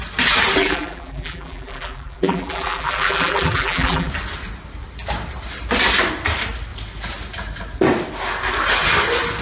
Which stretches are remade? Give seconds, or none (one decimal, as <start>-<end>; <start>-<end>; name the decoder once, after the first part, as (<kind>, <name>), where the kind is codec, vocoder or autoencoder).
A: 0.6-4.1 (vocoder, BigVGAN v2)